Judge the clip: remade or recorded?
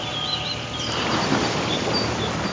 recorded